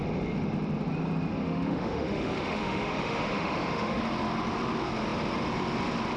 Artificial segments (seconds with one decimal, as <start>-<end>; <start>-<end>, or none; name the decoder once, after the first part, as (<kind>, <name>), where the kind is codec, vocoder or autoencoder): 1.3-4.0 (autoencoder, DAC-VAE)